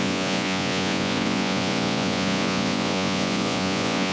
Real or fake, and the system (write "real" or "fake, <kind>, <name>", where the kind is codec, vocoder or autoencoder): fake, vocoder, Vocos